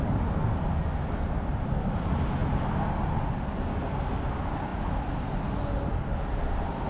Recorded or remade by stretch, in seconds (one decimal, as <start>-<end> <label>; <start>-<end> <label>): 0.0-6.9 recorded